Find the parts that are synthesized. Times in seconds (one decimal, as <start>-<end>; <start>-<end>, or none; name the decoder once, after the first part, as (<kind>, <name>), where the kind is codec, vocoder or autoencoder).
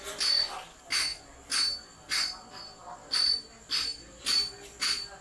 none